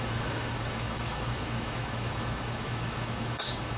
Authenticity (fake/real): fake